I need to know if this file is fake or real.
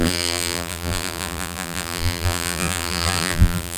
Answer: fake